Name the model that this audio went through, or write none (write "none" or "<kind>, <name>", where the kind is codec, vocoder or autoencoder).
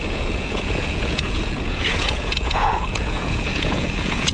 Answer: vocoder, Vocos